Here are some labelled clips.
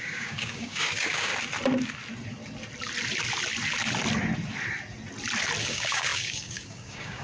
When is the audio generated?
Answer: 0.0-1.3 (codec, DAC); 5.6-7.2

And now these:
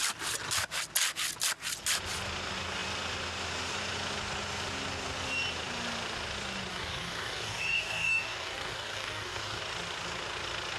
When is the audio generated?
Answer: 6.7-9.6 (codec, DAC)

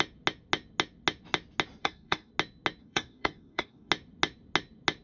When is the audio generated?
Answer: 1.8-2.3 (codec, DAC); 2.8-3.9

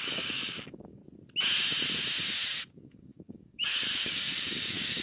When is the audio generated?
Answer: 0.0-1.0 (codec, DAC); 2.6-5.0

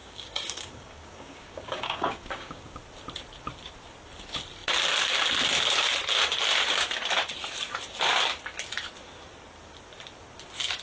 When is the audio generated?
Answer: 0.0-2.8 (codec, DAC)

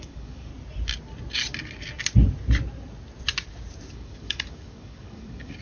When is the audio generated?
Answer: 0.0-0.5 (codec, DAC); 3.9-5.6